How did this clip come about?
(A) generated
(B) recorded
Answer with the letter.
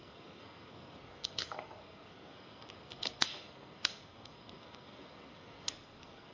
A